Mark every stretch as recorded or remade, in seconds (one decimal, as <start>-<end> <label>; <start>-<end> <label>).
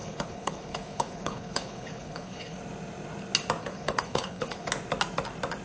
0.0-2.6 remade; 2.6-3.6 recorded; 3.6-4.7 remade; 4.7-5.6 recorded